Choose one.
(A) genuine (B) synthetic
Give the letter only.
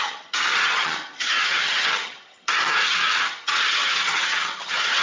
B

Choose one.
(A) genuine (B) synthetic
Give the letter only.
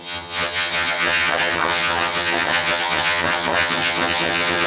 B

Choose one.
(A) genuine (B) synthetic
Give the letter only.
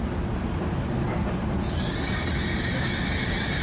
A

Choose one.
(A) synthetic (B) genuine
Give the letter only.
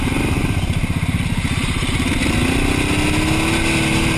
B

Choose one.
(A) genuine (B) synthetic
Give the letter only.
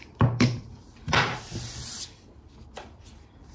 B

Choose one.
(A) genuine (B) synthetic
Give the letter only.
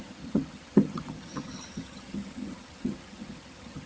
B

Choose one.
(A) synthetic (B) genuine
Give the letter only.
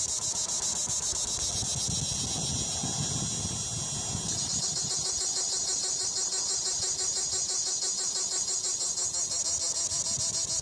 B